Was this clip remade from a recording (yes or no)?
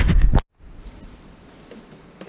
no